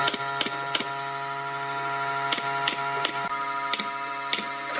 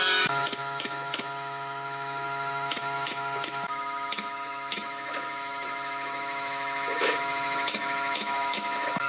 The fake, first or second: second